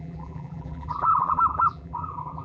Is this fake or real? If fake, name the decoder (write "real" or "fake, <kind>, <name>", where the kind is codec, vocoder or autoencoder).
fake, vocoder, BigVGAN v2